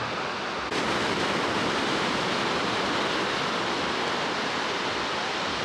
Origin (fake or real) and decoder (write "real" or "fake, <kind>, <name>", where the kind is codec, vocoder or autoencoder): real